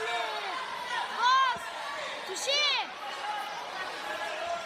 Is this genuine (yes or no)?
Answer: yes